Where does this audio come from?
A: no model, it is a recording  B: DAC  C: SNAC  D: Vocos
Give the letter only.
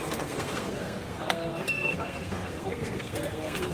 C